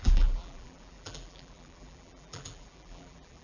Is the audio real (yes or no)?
no